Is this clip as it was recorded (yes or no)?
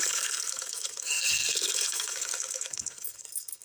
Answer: no